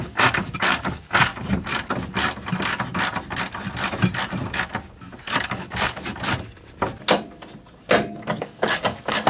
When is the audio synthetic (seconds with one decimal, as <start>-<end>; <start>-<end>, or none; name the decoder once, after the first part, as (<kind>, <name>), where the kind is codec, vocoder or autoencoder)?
0.0-1.3 (codec, DAC); 5.4-6.1; 8.1-9.3